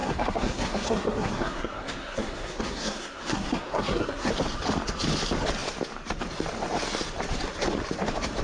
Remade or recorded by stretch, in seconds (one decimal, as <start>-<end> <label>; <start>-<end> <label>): 0.0-4.3 remade; 4.3-8.4 recorded